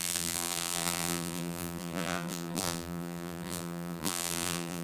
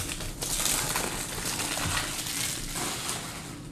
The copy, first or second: first